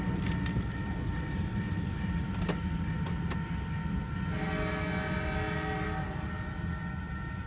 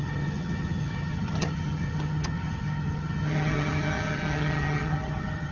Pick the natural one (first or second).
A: first